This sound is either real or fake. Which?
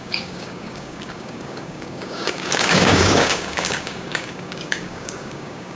fake